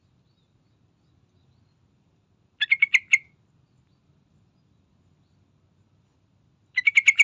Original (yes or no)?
yes